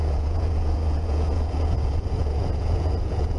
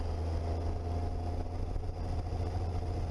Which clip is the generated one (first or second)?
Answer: first